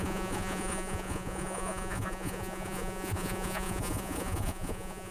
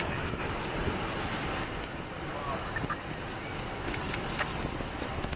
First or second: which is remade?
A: first